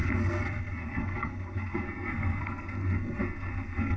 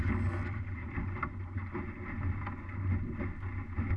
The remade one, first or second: first